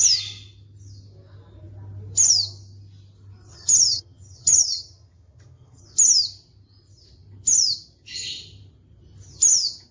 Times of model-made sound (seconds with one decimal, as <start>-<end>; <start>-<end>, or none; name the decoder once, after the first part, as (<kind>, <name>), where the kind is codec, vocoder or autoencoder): 3.5-5.8 (vocoder, HiFi-GAN)